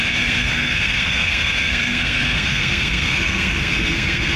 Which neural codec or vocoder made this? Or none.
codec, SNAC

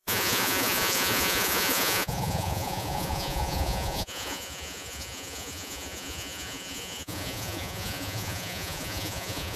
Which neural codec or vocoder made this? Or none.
vocoder, Vocos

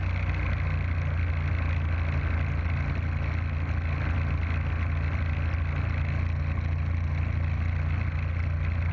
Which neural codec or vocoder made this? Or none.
none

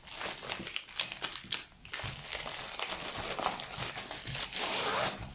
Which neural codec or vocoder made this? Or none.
none